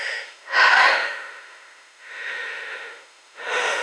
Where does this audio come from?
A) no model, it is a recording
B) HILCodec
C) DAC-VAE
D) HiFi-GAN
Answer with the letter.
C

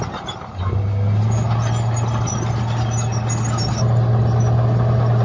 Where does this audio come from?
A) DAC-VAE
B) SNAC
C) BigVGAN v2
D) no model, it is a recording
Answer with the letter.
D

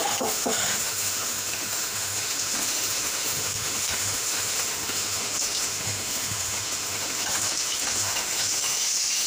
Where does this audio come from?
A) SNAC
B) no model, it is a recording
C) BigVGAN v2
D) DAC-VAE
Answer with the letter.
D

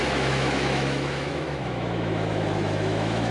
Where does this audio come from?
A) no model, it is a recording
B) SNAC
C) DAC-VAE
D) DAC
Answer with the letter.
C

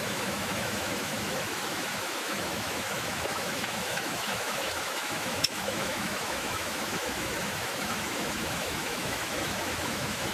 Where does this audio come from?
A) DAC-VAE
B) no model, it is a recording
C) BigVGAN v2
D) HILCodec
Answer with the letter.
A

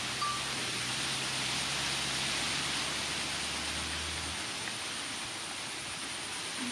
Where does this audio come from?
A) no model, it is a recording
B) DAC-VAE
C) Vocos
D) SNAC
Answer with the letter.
A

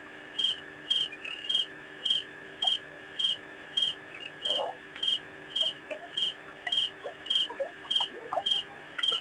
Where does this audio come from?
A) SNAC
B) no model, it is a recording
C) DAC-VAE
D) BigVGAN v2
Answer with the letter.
C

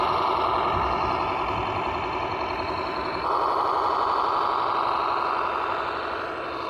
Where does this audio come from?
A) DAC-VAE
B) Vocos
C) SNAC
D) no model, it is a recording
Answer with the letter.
D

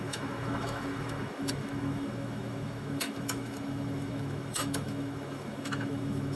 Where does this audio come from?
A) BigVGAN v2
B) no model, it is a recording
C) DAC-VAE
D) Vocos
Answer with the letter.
C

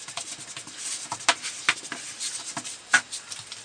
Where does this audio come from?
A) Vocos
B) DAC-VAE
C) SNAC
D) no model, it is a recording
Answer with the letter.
D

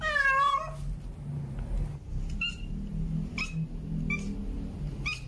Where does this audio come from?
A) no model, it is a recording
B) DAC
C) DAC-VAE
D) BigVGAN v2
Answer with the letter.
A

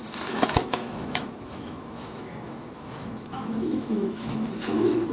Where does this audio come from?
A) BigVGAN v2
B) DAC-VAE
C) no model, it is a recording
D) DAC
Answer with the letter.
B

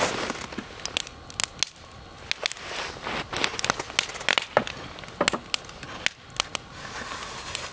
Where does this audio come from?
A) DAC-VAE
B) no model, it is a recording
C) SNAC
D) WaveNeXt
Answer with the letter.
B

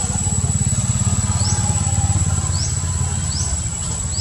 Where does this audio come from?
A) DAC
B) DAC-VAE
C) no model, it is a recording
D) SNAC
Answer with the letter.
C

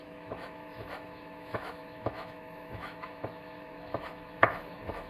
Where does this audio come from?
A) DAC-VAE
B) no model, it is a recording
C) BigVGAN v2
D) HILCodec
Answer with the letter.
A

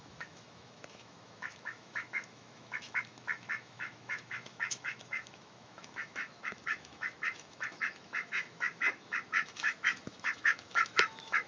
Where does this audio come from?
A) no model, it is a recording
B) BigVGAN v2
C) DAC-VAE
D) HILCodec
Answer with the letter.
C